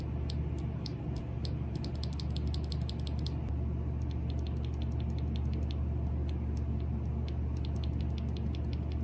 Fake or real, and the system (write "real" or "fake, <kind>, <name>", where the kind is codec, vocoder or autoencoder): real